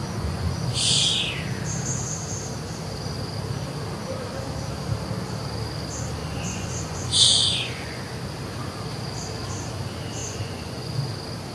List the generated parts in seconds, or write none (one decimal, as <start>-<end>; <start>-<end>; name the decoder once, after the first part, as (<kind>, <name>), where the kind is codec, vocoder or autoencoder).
0.0-1.0 (vocoder, Vocos); 6.2-8.0; 10.2-11.1